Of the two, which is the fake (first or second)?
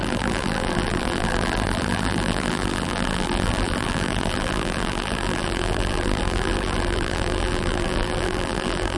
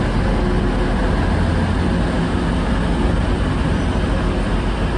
first